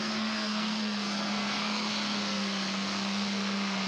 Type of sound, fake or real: fake